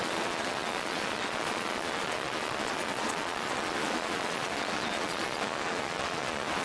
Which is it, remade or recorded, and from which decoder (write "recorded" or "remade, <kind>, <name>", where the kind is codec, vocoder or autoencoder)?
remade, vocoder, Vocos